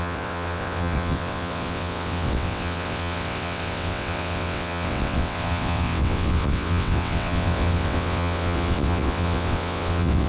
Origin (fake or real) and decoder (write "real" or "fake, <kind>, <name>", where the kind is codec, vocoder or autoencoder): fake, vocoder, WaveNeXt